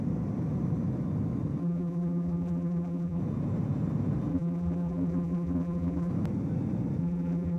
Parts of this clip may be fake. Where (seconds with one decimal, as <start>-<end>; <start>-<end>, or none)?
1.6-3.2; 4.3-6.1; 7.0-7.6